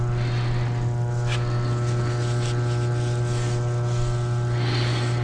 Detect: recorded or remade recorded